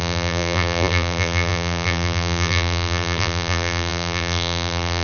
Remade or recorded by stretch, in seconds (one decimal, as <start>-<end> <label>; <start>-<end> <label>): 0.0-5.0 remade